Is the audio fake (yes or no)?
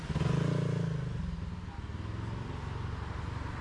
no